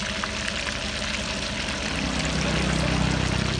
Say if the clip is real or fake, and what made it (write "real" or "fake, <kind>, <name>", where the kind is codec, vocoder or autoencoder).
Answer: real